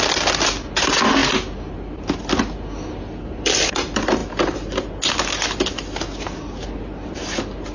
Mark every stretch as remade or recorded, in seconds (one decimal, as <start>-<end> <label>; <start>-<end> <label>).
0.0-7.7 recorded